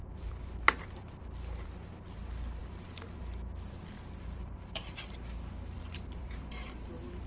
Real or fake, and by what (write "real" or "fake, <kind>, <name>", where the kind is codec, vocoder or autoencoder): fake, vocoder, BigVGAN v2